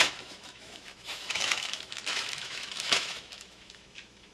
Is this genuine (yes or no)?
no